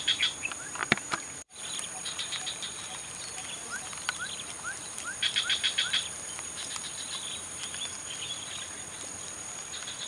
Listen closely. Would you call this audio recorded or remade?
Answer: remade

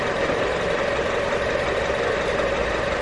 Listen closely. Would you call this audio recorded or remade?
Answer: recorded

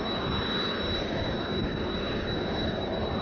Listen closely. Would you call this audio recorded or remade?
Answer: remade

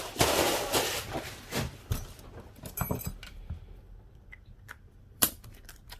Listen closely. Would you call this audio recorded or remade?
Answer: remade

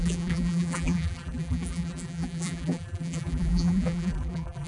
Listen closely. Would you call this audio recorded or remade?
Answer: remade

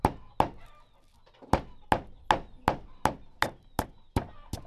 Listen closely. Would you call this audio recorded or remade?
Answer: recorded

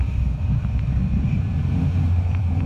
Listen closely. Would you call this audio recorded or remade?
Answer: remade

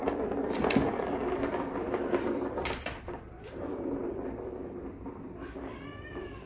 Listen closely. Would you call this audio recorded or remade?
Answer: remade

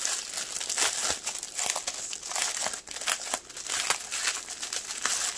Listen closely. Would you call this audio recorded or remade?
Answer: recorded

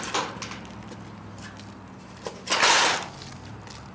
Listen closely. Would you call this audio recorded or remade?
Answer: recorded